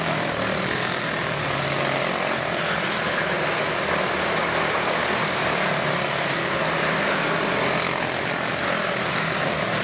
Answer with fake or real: real